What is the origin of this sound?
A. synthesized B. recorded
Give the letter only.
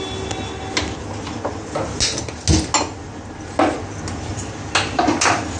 B